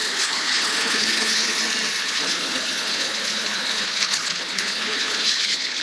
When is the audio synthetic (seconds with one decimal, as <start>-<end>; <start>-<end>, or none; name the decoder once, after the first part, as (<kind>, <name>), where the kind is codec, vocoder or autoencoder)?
0.0-1.6 (codec, HILCodec); 2.0-5.8